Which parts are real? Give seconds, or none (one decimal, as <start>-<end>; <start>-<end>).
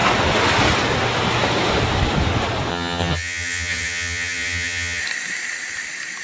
0.0-2.7; 5.0-6.2